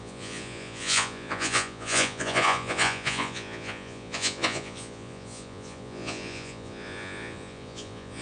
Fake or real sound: fake